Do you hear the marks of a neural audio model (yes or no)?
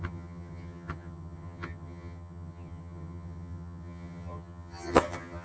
yes